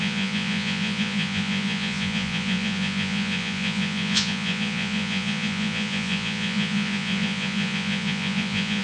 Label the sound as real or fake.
fake